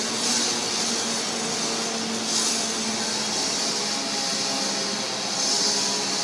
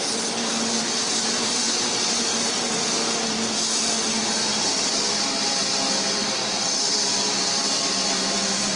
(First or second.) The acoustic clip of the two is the first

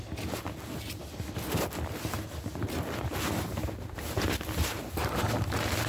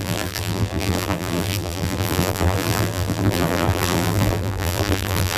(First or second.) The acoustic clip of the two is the first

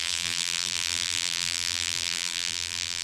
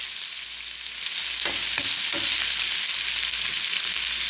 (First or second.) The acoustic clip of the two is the second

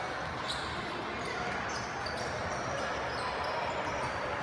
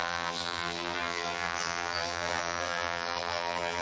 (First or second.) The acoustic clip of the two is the first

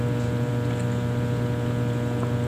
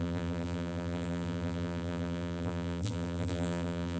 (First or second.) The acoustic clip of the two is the first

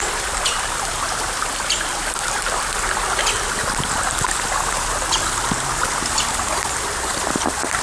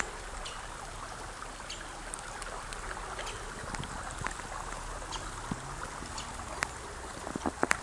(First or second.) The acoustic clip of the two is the second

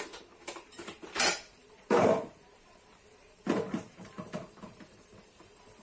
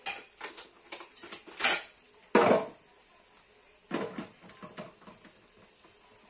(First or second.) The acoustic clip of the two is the second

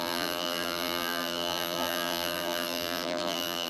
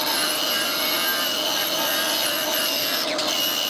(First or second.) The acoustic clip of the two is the second